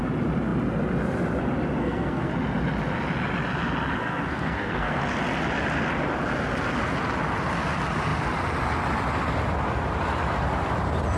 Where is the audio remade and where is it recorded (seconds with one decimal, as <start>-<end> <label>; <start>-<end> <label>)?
0.0-1.8 recorded; 1.8-2.3 remade; 2.3-4.0 recorded; 4.0-5.0 remade; 5.0-11.2 recorded